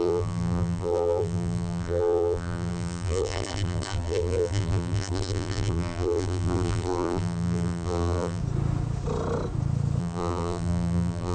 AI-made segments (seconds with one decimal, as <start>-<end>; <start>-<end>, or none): 0.0-8.4; 10.0-11.3